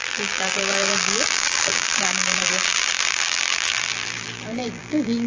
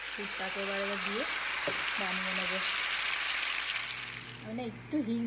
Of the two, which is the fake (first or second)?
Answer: first